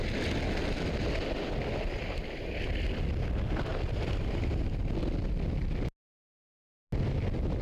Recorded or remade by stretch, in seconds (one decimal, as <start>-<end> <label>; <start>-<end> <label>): 0.0-3.7 recorded; 3.7-4.8 remade; 4.8-7.6 recorded

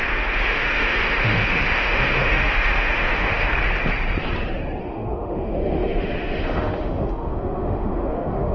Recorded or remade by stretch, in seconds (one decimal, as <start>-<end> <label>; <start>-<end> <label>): 0.0-3.5 remade; 3.5-4.8 recorded; 4.8-8.5 remade

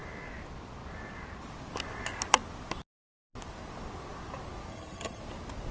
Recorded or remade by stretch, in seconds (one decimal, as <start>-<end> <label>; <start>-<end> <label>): 0.0-4.7 recorded; 4.7-5.2 remade; 5.2-5.7 recorded